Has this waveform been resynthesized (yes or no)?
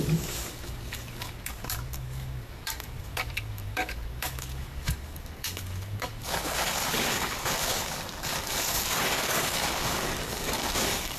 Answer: yes